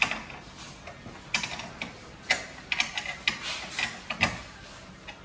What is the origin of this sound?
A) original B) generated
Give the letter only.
A